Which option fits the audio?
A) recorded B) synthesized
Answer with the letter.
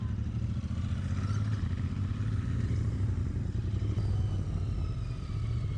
A